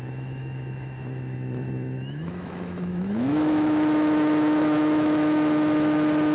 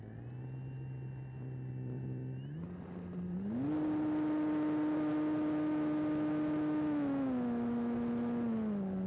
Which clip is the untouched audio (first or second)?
second